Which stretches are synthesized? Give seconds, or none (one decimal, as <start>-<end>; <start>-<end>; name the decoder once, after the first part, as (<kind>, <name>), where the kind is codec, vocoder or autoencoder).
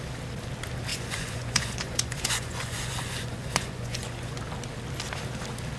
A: 0.9-4.4 (vocoder, Vocos)